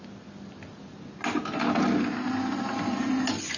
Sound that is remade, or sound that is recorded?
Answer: recorded